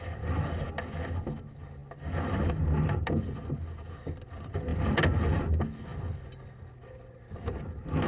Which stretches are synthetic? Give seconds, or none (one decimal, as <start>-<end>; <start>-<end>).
none